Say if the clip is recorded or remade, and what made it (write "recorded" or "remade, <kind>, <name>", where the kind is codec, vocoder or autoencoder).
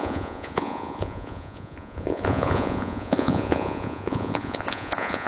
remade, vocoder, Vocos